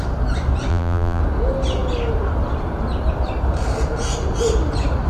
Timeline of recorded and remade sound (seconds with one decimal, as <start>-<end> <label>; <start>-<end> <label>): 0.0-0.7 recorded; 0.7-1.2 remade; 1.2-5.1 recorded